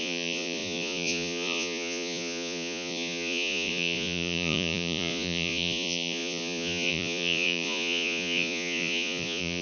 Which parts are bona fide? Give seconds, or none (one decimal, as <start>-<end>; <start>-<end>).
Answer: none